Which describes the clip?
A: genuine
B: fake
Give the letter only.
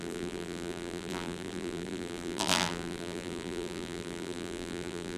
B